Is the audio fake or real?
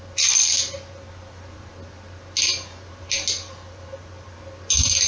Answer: real